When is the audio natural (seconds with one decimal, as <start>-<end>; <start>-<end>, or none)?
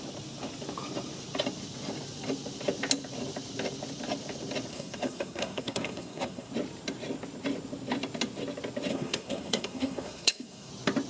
0.0-4.7; 6.5-8.9; 10.7-11.1